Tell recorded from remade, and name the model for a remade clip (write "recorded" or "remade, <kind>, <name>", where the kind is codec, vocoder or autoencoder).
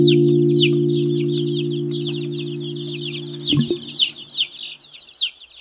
recorded